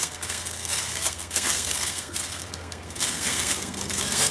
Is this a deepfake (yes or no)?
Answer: yes